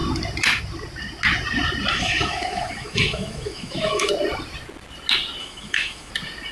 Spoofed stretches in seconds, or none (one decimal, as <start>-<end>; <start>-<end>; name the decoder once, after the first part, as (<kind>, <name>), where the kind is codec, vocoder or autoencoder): 1.9-4.1 (autoencoder, DAC-VAE); 5.4-6.1